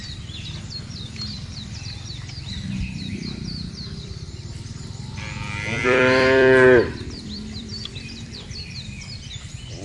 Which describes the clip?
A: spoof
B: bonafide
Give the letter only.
A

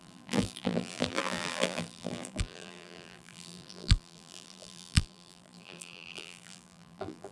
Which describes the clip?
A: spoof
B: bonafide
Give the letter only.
A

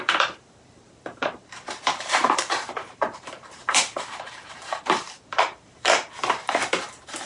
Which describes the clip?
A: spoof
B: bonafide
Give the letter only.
A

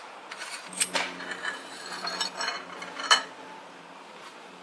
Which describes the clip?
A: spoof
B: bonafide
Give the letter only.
A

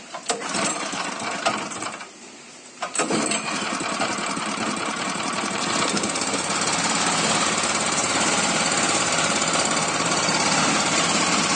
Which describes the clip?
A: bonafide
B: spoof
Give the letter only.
B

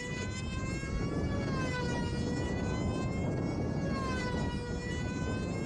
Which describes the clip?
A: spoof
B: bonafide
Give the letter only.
B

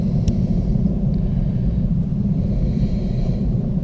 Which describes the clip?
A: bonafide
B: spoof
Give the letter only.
B